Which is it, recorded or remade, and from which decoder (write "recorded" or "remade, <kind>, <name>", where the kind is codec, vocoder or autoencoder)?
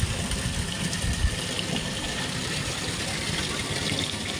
recorded